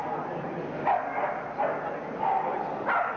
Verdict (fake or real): real